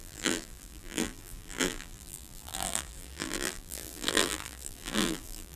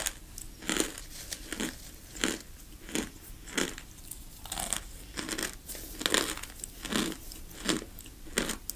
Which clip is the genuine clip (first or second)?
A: second